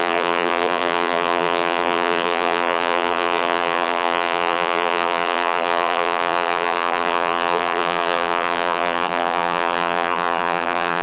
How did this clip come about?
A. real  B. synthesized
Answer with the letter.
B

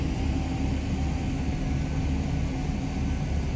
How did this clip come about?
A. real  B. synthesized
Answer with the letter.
A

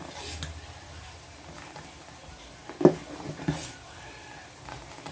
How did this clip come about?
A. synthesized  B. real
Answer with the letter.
B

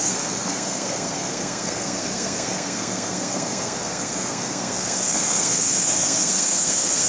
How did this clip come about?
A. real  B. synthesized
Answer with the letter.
B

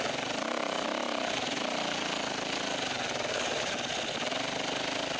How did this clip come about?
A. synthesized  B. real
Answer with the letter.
B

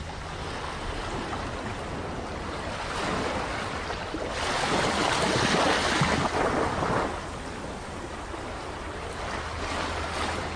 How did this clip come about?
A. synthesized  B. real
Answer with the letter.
B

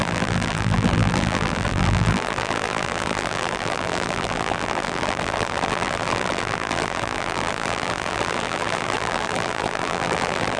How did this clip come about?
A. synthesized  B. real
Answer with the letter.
A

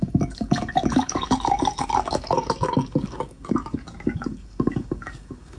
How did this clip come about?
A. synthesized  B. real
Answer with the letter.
A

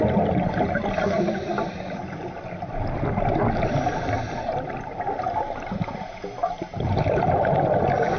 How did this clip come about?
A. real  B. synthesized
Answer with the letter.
A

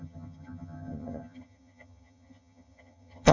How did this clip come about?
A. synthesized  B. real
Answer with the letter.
A